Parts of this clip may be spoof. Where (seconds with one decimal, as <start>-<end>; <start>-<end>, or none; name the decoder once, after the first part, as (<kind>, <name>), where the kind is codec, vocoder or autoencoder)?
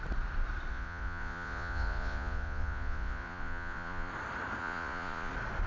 0.7-4.1 (vocoder, Vocos); 4.6-5.3